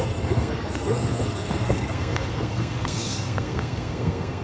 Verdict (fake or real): fake